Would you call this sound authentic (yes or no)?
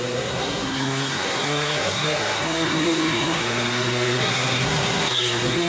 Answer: no